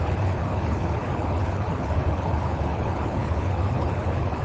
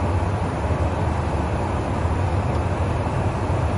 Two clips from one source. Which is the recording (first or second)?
second